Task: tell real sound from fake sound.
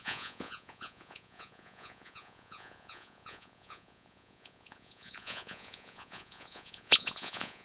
fake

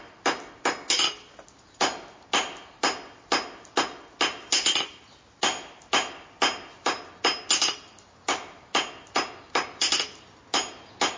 real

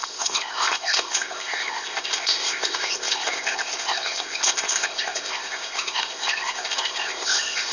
fake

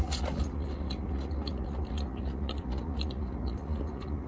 fake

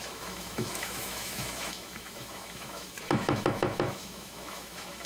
fake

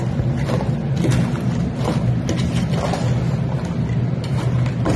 real